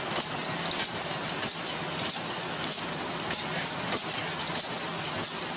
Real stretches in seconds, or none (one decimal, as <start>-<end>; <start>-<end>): 0.0-5.6